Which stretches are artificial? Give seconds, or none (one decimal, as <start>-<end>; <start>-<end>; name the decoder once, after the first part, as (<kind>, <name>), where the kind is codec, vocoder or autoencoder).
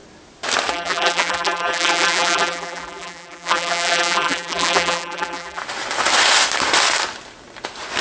0.7-5.6 (vocoder, BigVGAN v2)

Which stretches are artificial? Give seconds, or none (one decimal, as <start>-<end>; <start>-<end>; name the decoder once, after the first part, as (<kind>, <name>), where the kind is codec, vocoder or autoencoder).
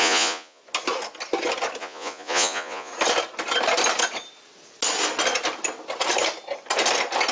0.0-0.6 (vocoder, Vocos); 1.8-2.9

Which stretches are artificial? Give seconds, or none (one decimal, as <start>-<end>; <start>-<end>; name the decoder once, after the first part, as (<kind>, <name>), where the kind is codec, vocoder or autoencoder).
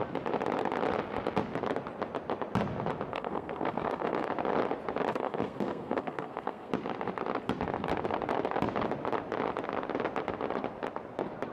3.1-4.3 (codec, SNAC); 5.1-6.7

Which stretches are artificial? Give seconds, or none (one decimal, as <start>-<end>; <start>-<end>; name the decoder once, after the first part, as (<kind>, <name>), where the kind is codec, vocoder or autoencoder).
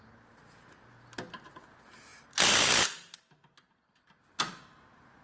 none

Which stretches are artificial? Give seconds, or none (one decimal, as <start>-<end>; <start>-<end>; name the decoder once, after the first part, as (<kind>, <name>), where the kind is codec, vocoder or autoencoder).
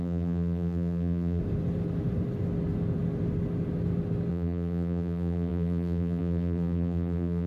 0.0-1.4 (vocoder, BigVGAN v2); 4.3-7.5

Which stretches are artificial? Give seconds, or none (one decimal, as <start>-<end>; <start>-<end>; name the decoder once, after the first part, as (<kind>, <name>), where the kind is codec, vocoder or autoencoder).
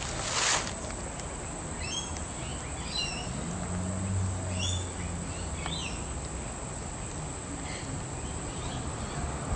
none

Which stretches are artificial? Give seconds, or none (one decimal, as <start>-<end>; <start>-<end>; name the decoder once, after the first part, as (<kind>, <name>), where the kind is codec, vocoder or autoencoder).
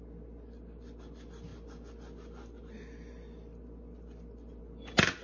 none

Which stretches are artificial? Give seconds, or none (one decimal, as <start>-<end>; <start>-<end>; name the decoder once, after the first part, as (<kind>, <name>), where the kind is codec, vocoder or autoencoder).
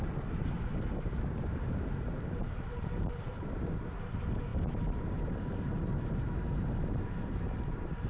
0.0-8.1 (vocoder, BigVGAN v2)